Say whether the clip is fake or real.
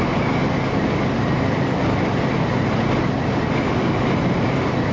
real